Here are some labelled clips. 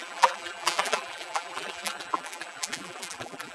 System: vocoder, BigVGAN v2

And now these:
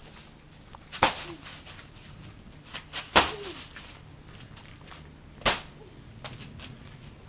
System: none